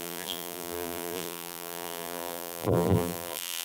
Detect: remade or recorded remade